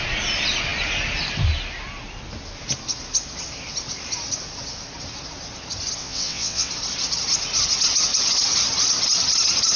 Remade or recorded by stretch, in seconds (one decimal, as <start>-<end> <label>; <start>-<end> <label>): 0.0-6.0 recorded; 6.0-6.7 remade; 6.7-9.8 recorded